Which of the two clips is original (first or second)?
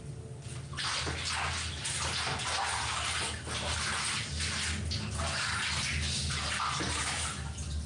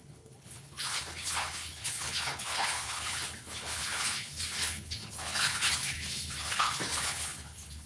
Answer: first